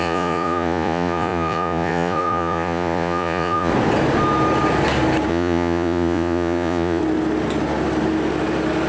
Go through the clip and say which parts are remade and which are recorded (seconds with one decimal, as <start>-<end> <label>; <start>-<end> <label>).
0.0-3.7 remade; 3.7-5.3 recorded; 5.3-7.0 remade; 7.0-8.9 recorded